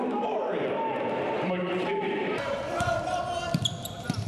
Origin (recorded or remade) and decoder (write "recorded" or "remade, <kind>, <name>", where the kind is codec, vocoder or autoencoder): remade, vocoder, BigVGAN v2